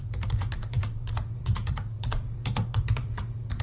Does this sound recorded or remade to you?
remade